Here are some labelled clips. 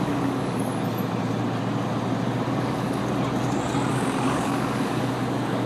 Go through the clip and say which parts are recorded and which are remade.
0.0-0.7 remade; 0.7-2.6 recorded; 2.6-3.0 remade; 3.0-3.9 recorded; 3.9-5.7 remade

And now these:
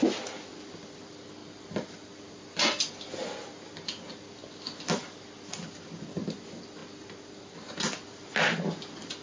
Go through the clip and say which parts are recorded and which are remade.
0.0-9.2 recorded